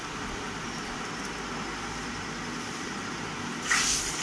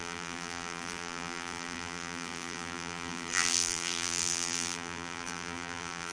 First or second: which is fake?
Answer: second